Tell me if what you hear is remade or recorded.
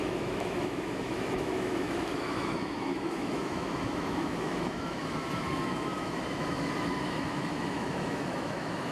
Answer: remade